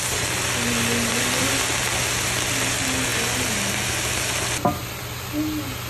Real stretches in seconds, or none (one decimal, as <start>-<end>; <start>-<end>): 0.0-5.9

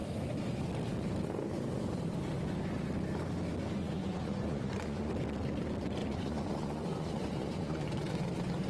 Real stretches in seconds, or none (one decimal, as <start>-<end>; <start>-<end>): 0.0-3.8; 5.1-6.0; 8.2-8.7

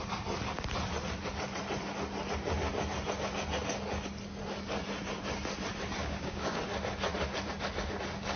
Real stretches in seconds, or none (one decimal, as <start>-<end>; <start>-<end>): 0.0-6.0; 6.6-8.4

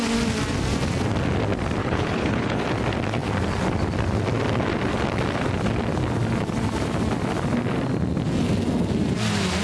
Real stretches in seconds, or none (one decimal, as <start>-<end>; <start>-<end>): 0.0-1.8; 2.6-9.6

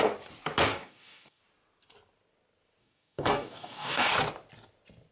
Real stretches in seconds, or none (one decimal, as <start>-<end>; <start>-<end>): 0.0-0.7; 1.4-2.8; 4.1-5.1